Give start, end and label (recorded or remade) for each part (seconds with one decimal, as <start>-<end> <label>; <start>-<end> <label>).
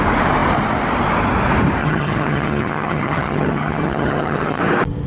0.0-1.8 recorded; 1.8-4.6 remade; 4.6-5.1 recorded